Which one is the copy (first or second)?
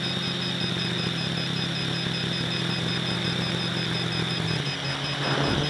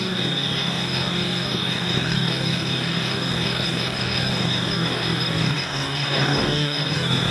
second